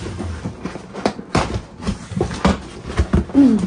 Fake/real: real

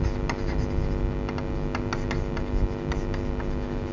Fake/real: real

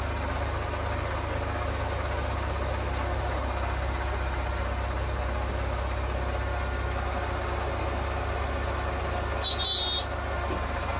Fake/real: real